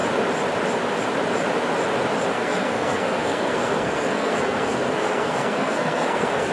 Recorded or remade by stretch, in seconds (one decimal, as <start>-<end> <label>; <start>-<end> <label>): 0.0-2.3 recorded; 2.3-6.5 remade